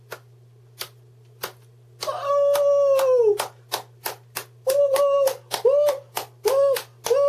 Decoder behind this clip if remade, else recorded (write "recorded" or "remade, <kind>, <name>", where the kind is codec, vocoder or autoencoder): recorded